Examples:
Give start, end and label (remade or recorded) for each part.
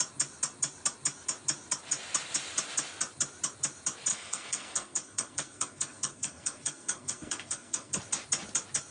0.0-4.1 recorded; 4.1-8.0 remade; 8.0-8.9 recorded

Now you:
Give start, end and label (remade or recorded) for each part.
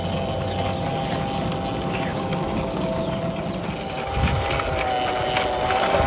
0.0-2.1 recorded; 2.1-3.0 remade; 3.0-6.1 recorded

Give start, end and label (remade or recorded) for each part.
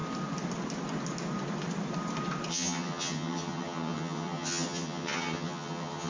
0.0-2.5 recorded; 2.5-6.1 remade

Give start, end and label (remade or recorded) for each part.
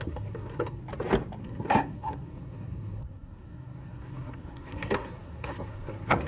0.0-0.8 remade; 0.8-1.4 recorded; 1.4-6.3 remade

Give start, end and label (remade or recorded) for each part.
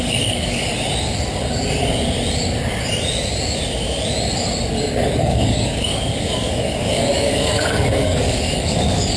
0.0-0.7 remade; 0.7-5.2 recorded; 5.2-9.2 remade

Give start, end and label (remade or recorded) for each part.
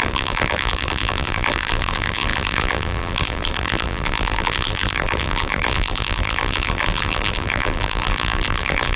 0.0-9.0 remade